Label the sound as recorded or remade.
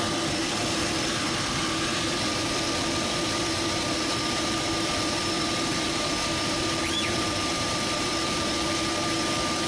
remade